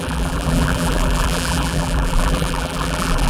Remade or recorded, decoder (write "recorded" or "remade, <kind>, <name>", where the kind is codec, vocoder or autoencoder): remade, vocoder, BigVGAN v2